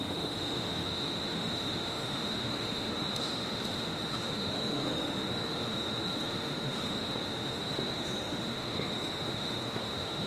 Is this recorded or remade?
remade